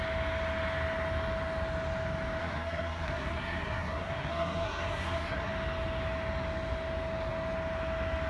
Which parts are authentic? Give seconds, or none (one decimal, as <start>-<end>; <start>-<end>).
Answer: 0.0-2.4; 5.5-8.3